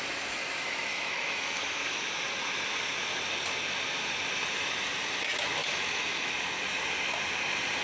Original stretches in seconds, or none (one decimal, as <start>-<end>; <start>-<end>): 0.0-0.9; 2.1-5.6; 6.3-7.8